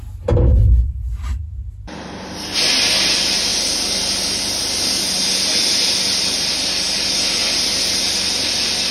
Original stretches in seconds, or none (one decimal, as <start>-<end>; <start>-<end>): 0.0-0.5; 1.5-8.9

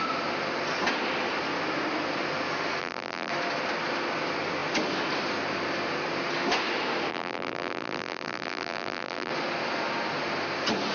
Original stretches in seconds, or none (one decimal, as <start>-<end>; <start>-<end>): 0.0-2.8; 3.3-7.1; 9.3-10.9

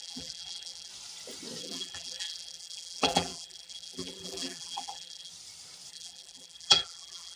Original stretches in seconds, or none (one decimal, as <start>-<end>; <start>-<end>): 0.9-1.6; 5.3-5.9

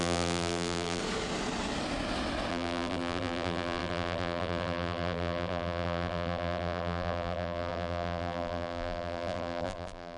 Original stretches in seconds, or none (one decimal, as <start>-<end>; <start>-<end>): 1.0-2.5

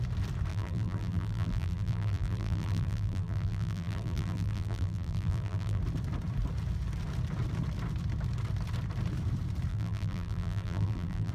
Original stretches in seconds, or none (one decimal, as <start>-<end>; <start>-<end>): 0.0-0.5; 5.8-9.7